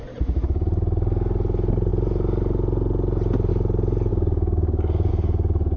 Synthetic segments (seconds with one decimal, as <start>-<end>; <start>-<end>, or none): 4.1-5.1

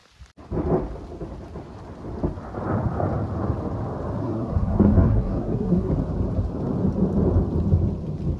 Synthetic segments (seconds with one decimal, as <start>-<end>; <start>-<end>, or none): 4.2-5.9

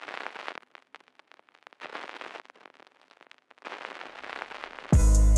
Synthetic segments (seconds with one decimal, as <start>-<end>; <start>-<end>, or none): none

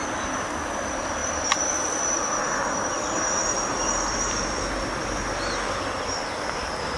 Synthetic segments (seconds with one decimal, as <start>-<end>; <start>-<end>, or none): 1.2-5.3

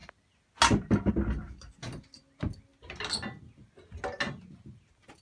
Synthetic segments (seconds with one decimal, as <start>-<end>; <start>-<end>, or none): none

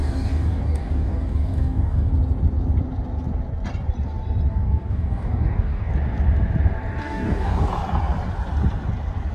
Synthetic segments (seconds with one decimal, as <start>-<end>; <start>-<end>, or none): 0.0-2.1; 4.5-5.9; 7.0-7.7

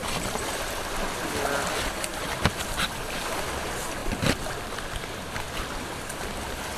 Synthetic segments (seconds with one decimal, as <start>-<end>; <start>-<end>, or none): 4.0-6.2

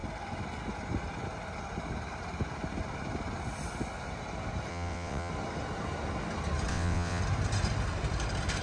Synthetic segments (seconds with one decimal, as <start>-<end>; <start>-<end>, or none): 4.7-5.3; 6.7-7.2